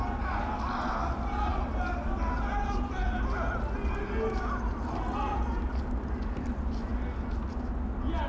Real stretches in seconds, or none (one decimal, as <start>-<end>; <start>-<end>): 0.0-8.3